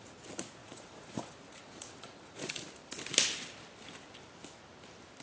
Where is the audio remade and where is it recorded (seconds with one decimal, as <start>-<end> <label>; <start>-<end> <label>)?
0.0-0.6 recorded; 0.6-2.7 remade; 2.7-5.2 recorded